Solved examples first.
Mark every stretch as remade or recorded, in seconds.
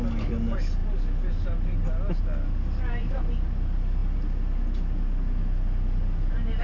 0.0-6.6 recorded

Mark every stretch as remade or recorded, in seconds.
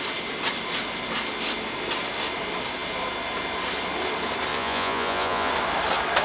0.0-4.5 recorded; 4.5-5.5 remade; 5.5-6.2 recorded